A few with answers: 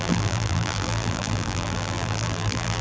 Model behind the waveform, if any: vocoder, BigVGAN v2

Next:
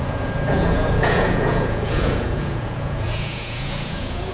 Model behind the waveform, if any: vocoder, Vocos